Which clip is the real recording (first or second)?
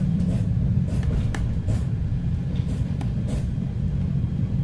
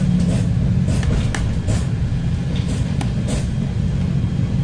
second